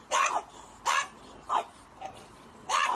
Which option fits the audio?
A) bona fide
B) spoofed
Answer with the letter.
A